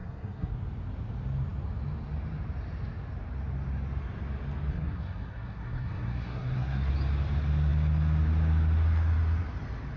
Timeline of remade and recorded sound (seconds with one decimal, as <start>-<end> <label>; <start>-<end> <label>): 0.0-0.5 remade; 0.5-4.7 recorded; 4.7-6.9 remade; 6.9-10.0 recorded